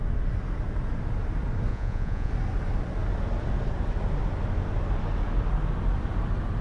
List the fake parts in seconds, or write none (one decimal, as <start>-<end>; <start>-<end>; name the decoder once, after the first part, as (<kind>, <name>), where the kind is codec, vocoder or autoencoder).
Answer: 1.7-2.3 (vocoder, Vocos)